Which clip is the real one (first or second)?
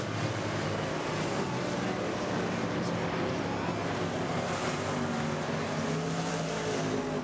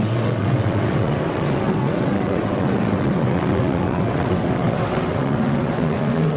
first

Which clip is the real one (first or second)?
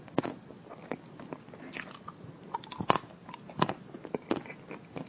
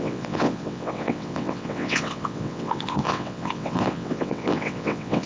first